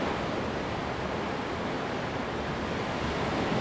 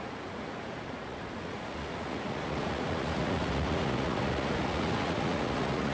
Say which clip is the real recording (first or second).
first